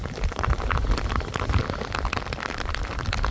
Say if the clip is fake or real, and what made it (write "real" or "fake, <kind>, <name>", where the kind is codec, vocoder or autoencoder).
real